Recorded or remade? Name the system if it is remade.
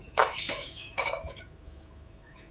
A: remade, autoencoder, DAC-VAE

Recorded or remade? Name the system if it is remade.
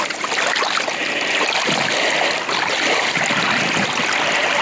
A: recorded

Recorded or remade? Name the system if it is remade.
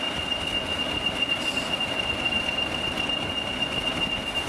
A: recorded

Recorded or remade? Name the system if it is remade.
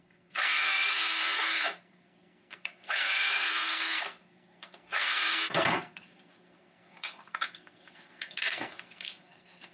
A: remade, codec, SNAC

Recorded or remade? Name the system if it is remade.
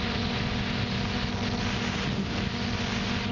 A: recorded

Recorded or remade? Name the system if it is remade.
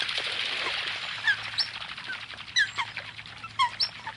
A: recorded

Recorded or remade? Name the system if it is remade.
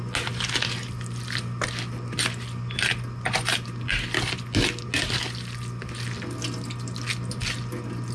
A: recorded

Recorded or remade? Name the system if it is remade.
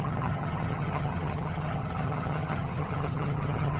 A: remade, vocoder, HiFi-GAN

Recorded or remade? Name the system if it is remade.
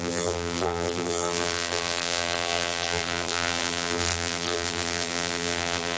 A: remade, vocoder, BigVGAN v2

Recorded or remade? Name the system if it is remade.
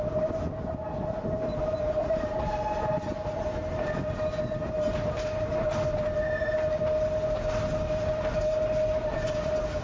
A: recorded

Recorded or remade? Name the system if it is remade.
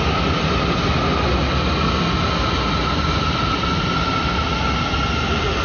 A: recorded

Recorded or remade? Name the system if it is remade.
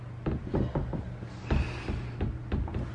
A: recorded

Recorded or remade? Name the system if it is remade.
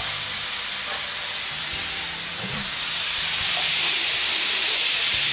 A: remade, vocoder, BigVGAN v2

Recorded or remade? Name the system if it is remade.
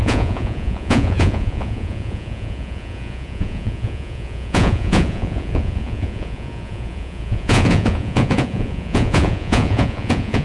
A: remade, vocoder, Vocos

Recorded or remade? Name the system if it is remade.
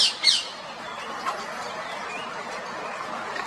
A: recorded